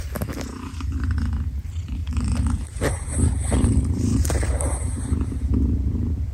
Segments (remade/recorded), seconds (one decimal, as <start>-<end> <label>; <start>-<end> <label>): 0.0-2.0 recorded; 2.0-5.5 remade; 5.5-6.3 recorded